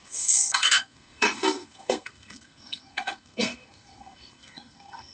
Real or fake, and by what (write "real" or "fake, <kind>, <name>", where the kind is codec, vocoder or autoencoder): fake, codec, SNAC